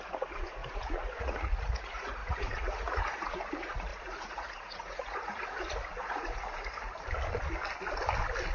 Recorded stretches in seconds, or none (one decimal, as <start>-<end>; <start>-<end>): 6.9-8.5